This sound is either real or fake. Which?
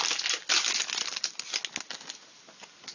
real